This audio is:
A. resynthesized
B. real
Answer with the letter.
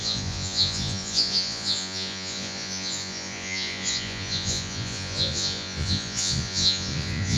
A